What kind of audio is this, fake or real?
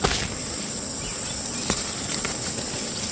real